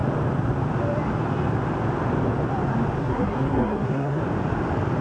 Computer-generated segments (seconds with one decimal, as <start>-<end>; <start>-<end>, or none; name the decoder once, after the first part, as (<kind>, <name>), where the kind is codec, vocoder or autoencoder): 3.0-4.2 (codec, SNAC)